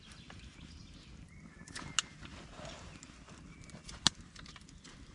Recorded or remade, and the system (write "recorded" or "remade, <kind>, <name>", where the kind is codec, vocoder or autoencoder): recorded